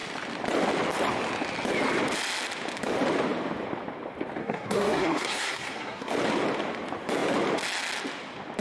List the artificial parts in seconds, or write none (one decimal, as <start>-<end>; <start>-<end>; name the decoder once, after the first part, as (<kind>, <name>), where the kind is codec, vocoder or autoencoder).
4.4-6.1 (codec, SNAC)